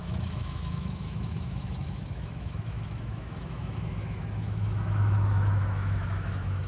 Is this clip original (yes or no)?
no